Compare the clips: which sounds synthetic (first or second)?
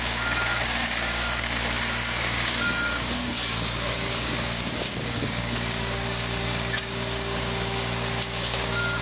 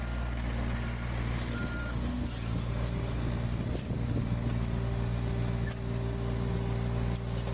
first